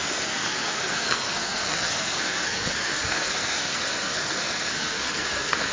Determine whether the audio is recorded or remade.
remade